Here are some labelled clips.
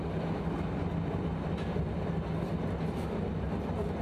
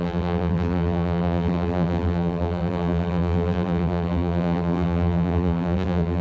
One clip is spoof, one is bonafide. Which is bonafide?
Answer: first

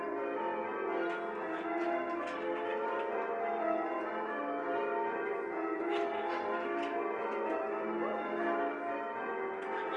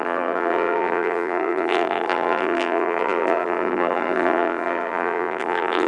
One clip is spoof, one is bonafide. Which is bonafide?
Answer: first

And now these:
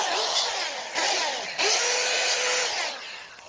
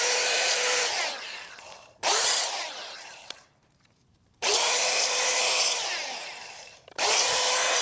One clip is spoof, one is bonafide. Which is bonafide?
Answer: first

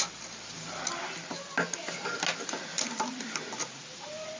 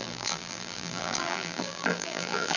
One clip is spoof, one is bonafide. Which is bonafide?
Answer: first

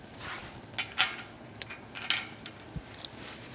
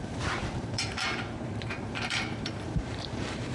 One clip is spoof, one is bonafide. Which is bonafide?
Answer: first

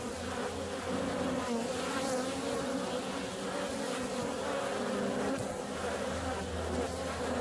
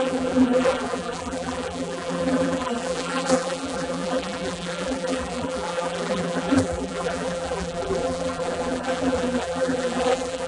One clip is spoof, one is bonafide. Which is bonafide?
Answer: first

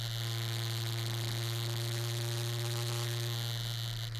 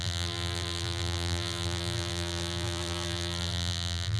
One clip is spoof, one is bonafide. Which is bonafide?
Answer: first